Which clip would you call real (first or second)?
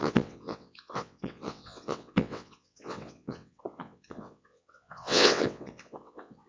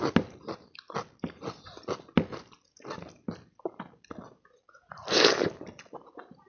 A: second